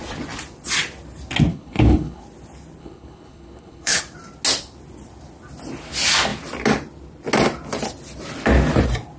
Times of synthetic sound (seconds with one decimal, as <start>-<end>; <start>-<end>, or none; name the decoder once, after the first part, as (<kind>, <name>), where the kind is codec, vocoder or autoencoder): 1.5-2.2 (codec, HILCodec); 2.8-4.0